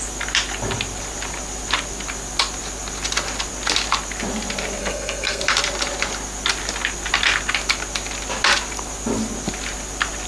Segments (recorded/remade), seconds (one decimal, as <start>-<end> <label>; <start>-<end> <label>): 0.0-4.8 recorded; 4.8-5.4 remade; 5.4-10.3 recorded